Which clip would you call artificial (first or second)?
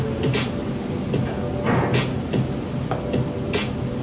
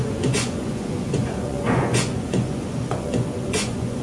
second